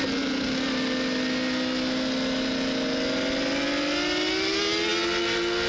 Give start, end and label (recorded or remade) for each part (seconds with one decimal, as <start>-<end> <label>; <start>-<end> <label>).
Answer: 0.0-5.7 recorded